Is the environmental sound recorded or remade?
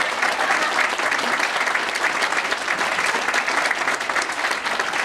recorded